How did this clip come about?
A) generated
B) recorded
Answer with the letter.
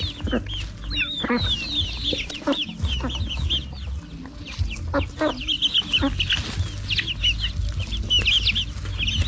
B